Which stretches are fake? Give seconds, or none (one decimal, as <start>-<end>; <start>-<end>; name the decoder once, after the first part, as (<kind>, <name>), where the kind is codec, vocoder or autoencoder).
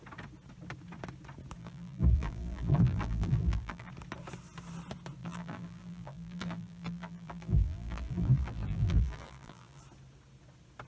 1.6-3.9 (vocoder, BigVGAN v2); 5.2-9.8